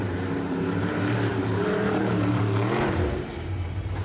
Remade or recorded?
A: remade